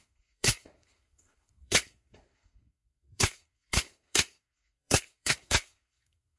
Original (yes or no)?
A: no